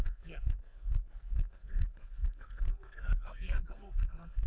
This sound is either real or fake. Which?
fake